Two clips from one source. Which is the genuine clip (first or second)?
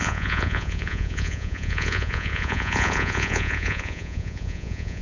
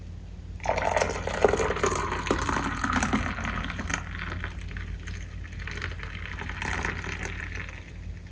second